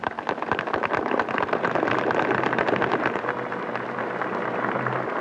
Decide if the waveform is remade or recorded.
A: recorded